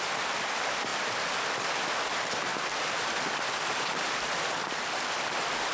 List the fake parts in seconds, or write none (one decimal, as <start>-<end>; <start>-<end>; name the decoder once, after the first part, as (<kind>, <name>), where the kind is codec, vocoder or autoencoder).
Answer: none